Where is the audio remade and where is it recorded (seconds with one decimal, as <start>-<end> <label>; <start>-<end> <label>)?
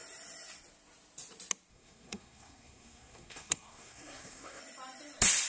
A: 0.0-1.7 recorded; 1.7-4.6 remade; 4.6-5.5 recorded